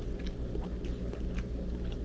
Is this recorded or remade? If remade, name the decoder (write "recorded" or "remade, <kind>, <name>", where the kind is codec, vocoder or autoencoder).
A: recorded